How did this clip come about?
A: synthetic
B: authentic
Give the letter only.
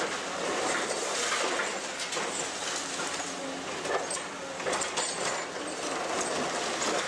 B